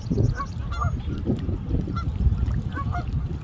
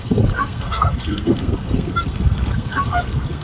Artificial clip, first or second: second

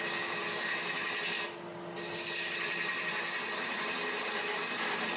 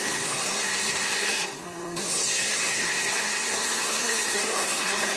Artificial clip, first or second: second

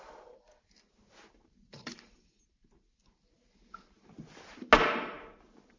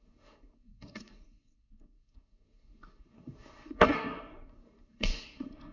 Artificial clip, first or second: second